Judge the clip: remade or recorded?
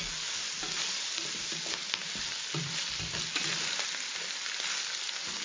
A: recorded